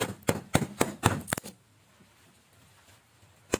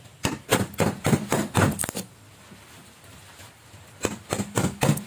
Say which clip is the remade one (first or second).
second